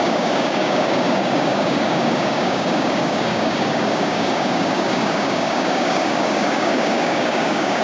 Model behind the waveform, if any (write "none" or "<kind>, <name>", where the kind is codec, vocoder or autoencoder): codec, DAC